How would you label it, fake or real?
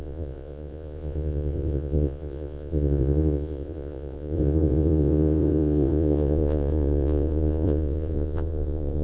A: fake